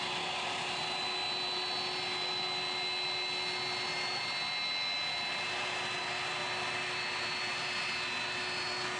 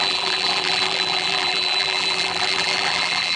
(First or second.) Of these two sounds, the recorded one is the first